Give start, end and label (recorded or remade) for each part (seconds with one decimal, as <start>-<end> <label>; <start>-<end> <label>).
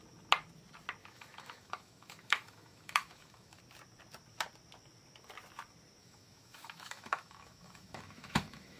0.0-1.0 recorded; 1.0-3.6 remade; 3.6-6.0 recorded; 6.0-8.8 remade